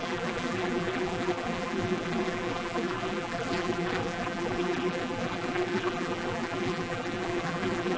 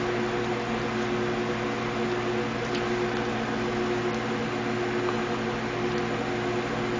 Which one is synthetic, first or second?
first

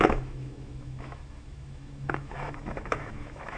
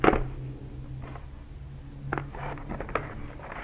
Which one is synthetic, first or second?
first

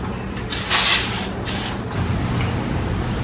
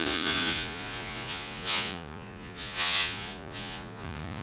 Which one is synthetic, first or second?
second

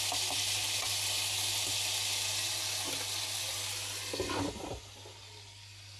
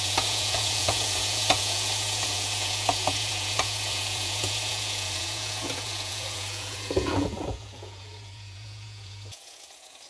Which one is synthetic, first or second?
second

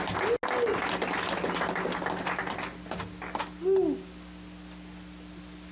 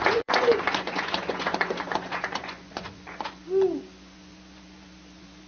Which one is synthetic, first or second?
second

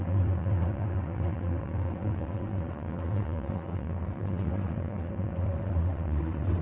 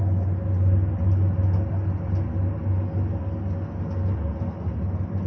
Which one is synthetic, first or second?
first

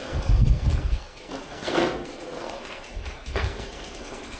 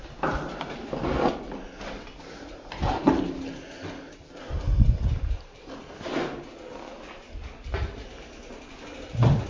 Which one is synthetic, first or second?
first